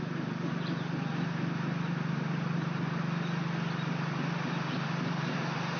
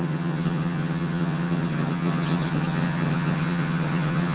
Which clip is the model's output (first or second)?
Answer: second